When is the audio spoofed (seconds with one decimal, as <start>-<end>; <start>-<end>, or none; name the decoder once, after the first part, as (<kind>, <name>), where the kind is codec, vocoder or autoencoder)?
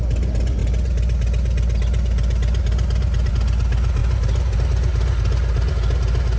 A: none